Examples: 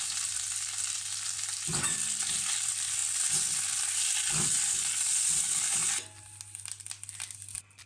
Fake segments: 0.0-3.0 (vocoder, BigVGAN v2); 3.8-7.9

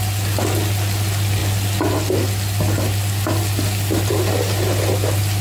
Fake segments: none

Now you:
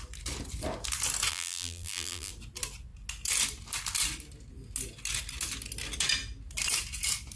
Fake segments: 1.3-2.3 (vocoder, BigVGAN v2)

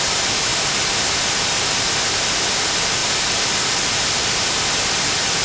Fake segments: none